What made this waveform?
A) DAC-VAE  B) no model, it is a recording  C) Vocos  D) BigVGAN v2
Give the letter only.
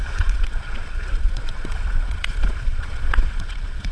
C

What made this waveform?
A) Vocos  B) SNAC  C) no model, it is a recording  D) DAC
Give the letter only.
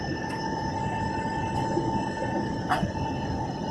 C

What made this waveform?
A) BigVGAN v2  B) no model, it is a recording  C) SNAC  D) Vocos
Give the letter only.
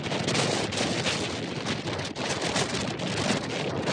B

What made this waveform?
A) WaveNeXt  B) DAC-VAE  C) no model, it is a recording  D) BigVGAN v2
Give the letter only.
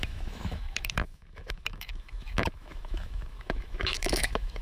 B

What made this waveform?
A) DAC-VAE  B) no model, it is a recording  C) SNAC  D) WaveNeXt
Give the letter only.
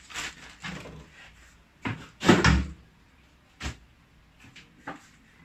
B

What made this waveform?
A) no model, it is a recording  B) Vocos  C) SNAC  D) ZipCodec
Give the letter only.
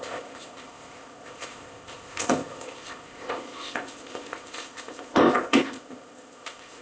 D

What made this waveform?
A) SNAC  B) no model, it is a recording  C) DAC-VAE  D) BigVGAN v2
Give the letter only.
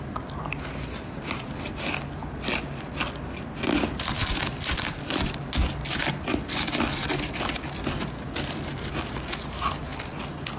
B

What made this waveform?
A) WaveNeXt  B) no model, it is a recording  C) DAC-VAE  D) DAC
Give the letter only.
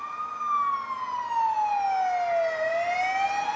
B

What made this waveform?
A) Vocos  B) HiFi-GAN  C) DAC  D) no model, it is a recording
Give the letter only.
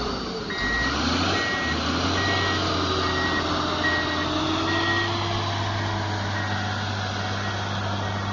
D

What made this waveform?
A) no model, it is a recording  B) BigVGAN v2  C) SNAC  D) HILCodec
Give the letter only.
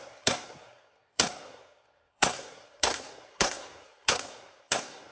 C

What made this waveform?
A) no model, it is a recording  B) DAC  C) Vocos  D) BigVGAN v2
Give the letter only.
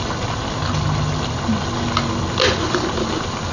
A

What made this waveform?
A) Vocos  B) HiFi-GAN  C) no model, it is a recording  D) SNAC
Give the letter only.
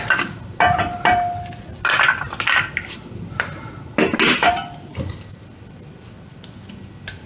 C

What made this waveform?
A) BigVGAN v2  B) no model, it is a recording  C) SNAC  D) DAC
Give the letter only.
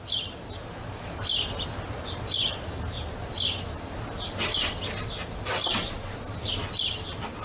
B